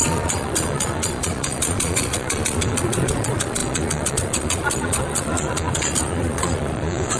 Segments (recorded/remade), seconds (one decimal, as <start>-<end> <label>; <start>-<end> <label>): 0.0-7.2 remade